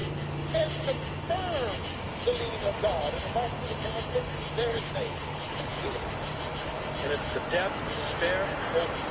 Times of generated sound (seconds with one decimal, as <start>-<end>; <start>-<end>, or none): 4.7-6.1